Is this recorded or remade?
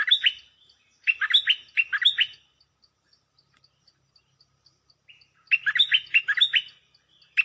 recorded